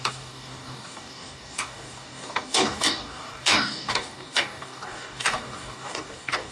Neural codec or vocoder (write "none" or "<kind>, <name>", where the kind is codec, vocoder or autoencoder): codec, DAC